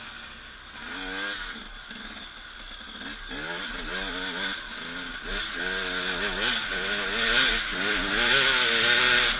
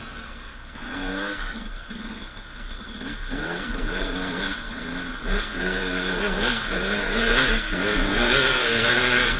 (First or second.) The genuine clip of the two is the first